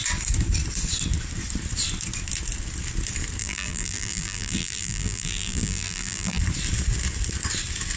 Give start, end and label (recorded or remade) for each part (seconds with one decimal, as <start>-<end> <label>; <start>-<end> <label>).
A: 0.0-3.4 recorded; 3.4-6.4 remade; 6.4-8.0 recorded